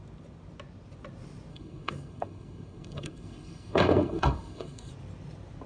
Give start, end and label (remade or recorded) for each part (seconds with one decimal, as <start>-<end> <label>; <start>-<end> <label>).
0.0-1.5 recorded; 1.5-4.9 remade; 4.9-5.7 recorded